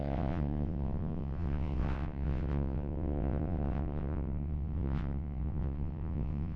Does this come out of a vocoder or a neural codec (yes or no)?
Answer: yes